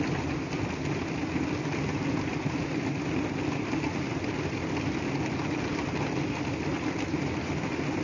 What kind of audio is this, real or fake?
real